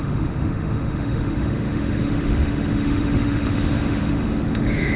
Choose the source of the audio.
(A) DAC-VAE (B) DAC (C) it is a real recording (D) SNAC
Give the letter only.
A